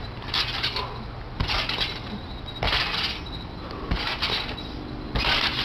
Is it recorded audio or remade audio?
recorded